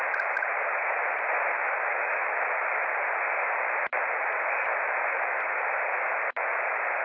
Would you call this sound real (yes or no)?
yes